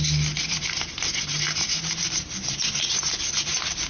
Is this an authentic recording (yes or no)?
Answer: yes